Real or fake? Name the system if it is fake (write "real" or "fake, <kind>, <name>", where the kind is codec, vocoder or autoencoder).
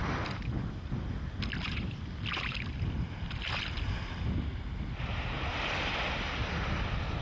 real